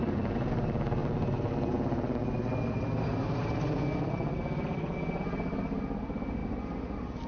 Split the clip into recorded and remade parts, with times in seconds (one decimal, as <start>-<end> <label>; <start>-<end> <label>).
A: 0.0-7.3 recorded